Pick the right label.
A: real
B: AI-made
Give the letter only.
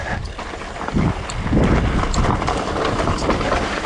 A